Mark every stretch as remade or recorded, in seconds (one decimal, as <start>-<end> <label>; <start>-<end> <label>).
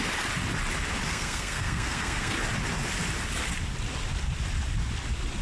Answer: 0.0-1.1 recorded; 1.1-2.3 remade; 2.3-5.4 recorded